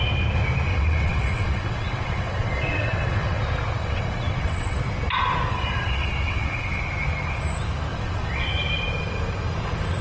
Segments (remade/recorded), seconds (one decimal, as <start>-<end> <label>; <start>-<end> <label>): 0.0-0.7 recorded; 0.7-3.4 remade; 3.4-3.8 recorded; 3.8-4.8 remade; 4.8-5.5 recorded; 5.5-6.8 remade; 6.8-7.9 recorded; 7.9-8.6 remade; 8.6-10.0 recorded

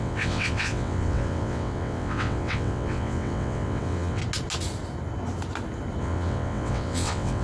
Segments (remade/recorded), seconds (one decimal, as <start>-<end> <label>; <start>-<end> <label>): 0.0-4.2 remade; 4.2-6.0 recorded; 6.0-7.4 remade

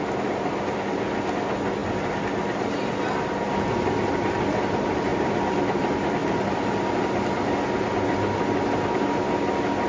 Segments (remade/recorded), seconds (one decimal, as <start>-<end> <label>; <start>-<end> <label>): 0.0-9.9 recorded

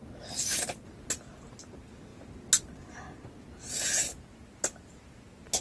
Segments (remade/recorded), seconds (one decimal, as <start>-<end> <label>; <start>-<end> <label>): 0.0-5.6 recorded

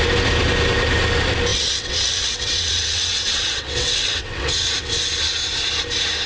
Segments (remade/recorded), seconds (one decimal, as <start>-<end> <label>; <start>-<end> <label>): 0.0-1.5 recorded; 1.5-4.9 remade; 4.9-6.3 recorded